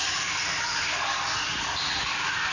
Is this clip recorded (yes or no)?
yes